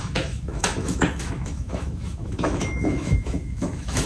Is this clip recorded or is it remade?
remade